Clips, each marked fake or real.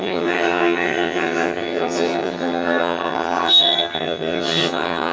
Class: fake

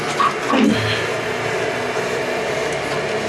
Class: real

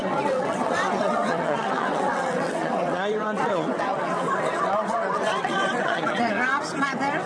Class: fake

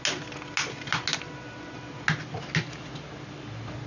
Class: real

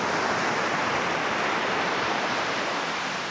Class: real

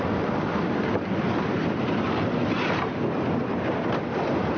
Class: fake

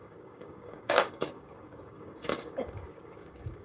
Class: fake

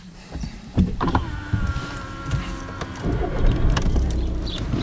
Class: fake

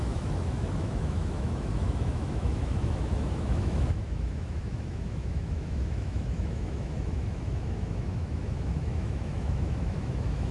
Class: fake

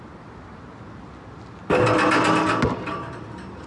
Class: real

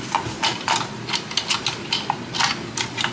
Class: real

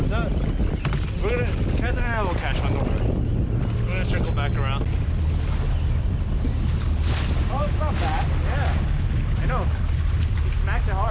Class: real